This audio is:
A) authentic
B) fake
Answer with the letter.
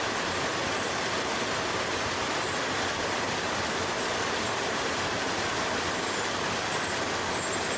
A